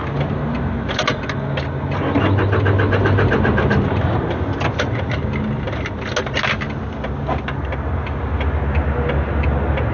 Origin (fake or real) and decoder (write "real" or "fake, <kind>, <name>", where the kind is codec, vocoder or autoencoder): real